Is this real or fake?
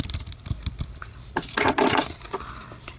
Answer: real